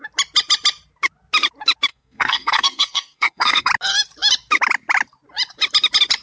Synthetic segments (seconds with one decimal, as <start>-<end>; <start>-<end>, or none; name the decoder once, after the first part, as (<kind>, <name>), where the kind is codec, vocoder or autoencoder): 1.9-3.7 (codec, SNAC)